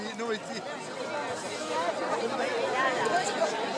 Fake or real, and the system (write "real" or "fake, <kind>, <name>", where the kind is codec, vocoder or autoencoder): real